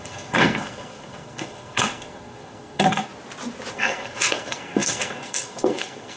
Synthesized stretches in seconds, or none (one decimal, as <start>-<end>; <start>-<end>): 0.0-3.1; 3.7-6.2